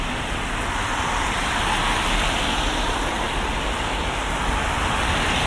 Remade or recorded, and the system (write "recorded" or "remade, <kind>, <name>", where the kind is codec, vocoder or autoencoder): recorded